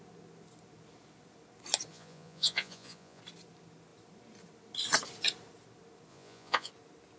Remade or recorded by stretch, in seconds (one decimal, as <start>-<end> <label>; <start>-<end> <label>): 0.0-1.9 recorded; 1.9-3.2 remade; 3.2-6.1 recorded; 6.1-6.7 remade; 6.7-7.2 recorded